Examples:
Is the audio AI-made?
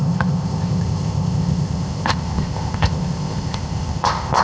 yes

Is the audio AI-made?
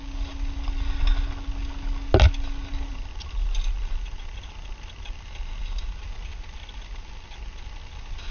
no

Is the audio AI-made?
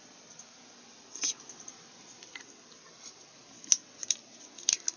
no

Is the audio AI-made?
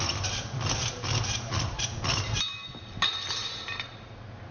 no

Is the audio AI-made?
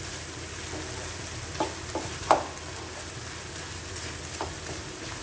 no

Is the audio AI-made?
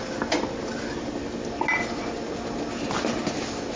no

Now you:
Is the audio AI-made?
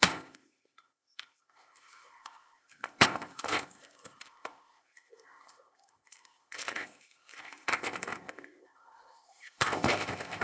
yes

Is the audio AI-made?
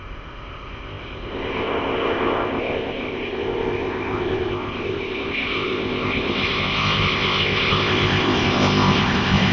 yes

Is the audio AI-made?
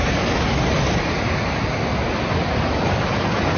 no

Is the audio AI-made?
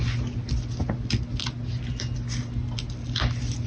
no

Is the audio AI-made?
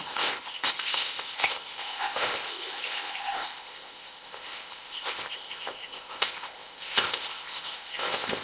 yes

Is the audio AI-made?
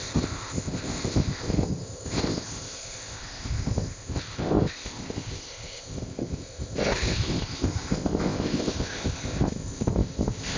yes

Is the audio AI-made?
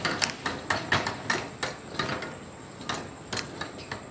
no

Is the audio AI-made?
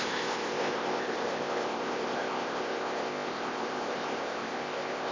yes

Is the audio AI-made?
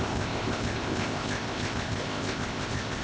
yes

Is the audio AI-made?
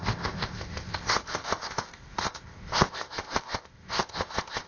yes